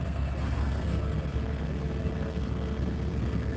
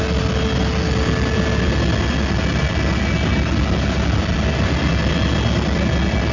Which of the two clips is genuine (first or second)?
second